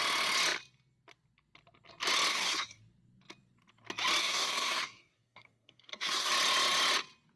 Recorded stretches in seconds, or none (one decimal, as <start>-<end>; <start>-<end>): 0.0-2.3; 2.8-4.2; 6.3-7.4